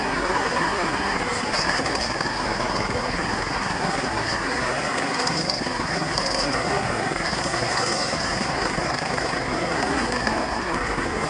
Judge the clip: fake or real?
fake